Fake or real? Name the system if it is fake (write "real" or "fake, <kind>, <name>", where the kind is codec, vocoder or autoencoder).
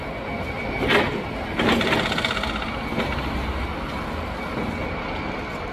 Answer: real